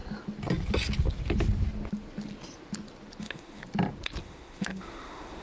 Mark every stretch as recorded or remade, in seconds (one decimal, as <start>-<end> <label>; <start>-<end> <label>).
0.0-3.2 recorded; 3.2-3.6 remade; 3.6-4.2 recorded; 4.2-5.4 remade